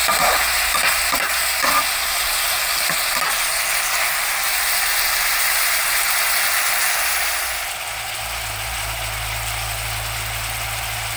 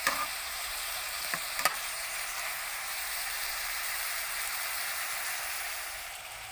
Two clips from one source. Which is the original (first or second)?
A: first